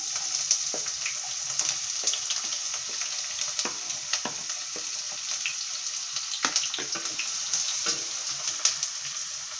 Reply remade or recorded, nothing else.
recorded